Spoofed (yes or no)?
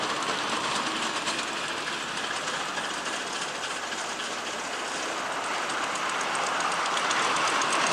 no